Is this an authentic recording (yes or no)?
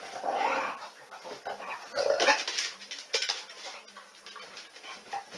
yes